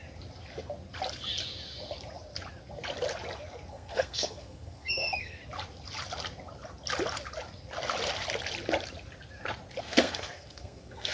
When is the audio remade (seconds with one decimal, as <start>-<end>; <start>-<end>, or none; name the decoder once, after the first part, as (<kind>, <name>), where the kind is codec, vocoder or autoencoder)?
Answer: 3.7-5.4 (codec, SNAC); 9.8-11.1